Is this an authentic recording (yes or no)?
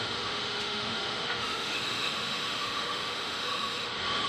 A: no